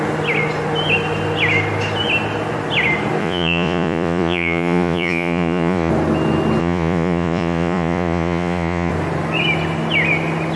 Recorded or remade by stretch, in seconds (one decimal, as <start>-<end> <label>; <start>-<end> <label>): 0.0-3.2 recorded; 3.2-5.9 remade; 5.9-6.6 recorded; 6.6-8.9 remade; 8.9-10.6 recorded